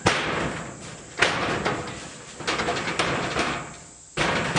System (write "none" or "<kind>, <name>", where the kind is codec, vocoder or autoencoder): none